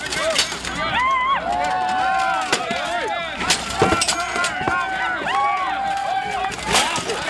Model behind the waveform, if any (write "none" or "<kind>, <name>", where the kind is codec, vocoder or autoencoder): none